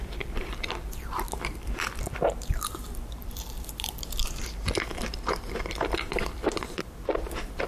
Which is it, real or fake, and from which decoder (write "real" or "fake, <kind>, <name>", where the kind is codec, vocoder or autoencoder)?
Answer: fake, vocoder, BigVGAN v2